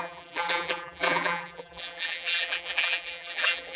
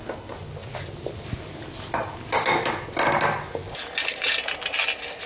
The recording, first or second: second